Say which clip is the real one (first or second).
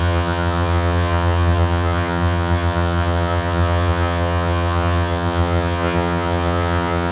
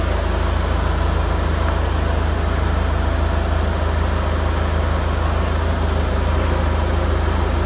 second